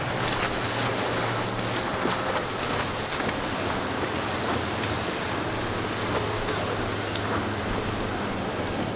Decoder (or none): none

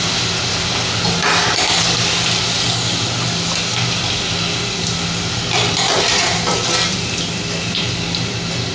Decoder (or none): none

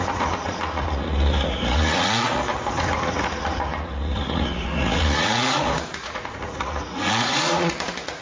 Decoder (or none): vocoder, Vocos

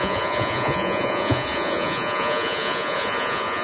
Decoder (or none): vocoder, Vocos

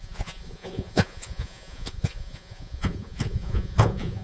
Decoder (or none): vocoder, Vocos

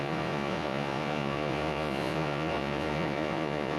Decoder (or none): vocoder, Vocos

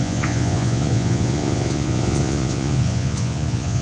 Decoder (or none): vocoder, Vocos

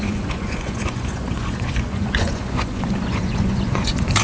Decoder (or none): vocoder, Vocos